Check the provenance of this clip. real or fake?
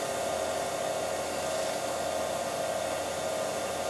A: real